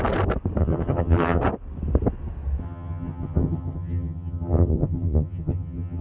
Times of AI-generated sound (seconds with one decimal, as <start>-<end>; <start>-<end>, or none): 0.6-1.4; 2.6-6.0